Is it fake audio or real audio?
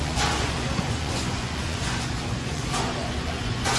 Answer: fake